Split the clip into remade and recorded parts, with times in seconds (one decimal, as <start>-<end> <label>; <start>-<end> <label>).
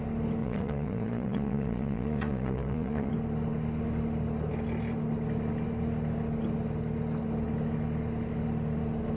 0.0-0.4 recorded; 0.4-3.1 remade; 3.1-9.2 recorded